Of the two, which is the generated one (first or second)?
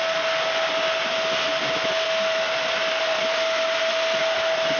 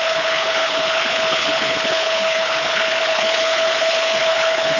second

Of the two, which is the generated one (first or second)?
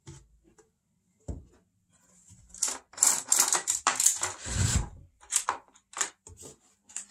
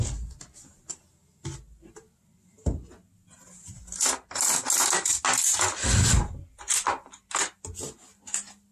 first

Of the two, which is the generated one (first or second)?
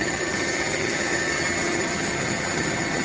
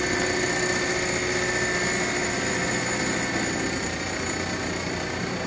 first